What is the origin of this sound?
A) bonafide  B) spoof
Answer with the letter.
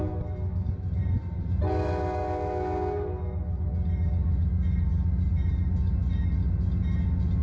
A